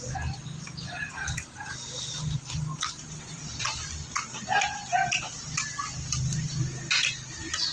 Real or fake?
real